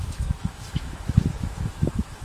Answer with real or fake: fake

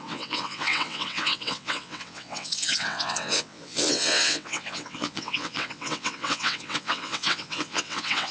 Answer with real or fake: fake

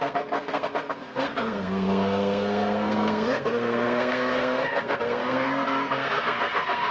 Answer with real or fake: fake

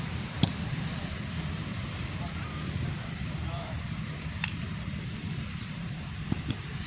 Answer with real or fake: fake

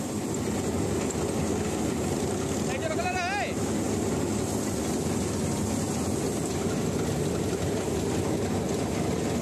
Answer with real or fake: real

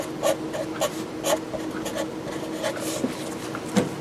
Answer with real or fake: real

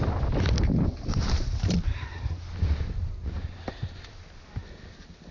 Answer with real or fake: real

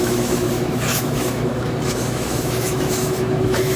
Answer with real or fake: fake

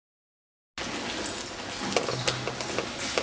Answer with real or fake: real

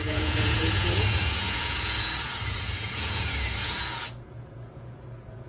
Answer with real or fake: fake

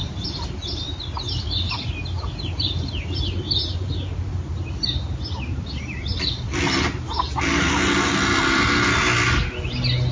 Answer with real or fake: real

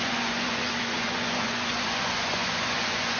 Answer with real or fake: fake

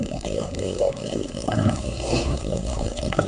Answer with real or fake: fake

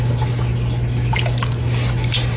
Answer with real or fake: real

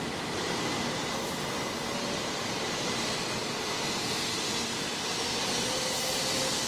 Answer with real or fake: real